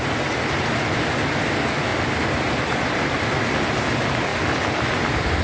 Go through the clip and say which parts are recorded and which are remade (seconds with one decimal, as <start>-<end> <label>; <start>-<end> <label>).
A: 0.0-5.4 recorded